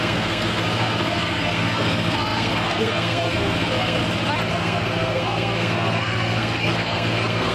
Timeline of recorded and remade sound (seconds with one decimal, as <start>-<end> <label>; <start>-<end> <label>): 0.0-4.0 remade; 4.0-4.5 recorded; 4.5-7.5 remade

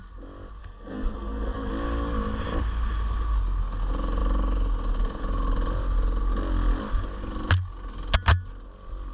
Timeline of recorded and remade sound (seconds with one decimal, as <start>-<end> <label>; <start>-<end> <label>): 0.0-0.6 recorded; 0.6-1.7 remade; 1.7-9.1 recorded